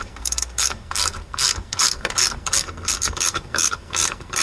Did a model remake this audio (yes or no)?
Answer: yes